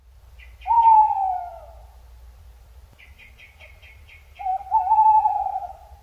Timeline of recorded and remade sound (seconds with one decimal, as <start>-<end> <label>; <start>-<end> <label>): 0.0-4.5 remade; 4.5-5.4 recorded; 5.4-6.0 remade